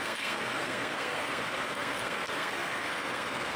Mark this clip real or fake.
fake